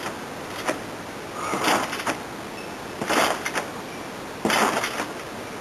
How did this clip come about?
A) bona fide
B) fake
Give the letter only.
A